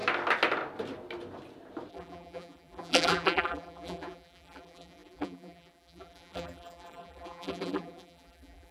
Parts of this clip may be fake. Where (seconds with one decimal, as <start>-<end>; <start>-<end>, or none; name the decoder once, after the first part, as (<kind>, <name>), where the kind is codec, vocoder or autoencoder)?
1.9-8.7 (vocoder, BigVGAN v2)